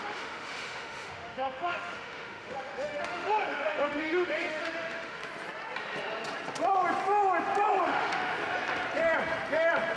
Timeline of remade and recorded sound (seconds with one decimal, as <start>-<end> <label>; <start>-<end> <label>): 0.0-5.2 remade; 5.2-7.8 recorded; 7.8-8.4 remade; 8.4-10.0 recorded